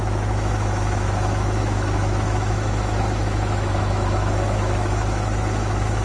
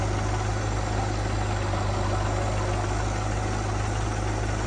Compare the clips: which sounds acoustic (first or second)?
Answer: second